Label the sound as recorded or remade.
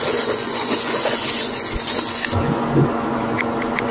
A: remade